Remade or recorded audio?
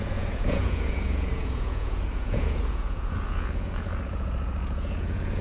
remade